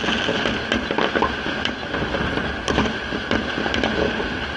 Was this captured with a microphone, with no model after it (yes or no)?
yes